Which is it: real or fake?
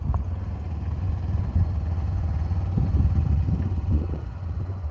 fake